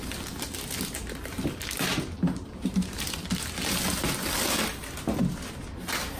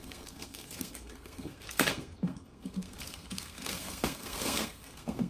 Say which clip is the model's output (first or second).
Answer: second